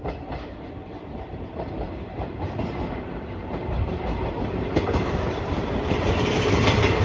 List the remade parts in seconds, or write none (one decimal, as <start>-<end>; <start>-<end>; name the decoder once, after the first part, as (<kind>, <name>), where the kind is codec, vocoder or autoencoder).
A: 0.0-7.0 (vocoder, BigVGAN v2)